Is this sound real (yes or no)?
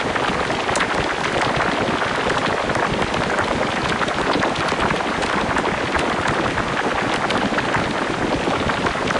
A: yes